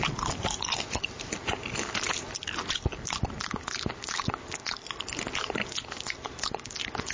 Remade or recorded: recorded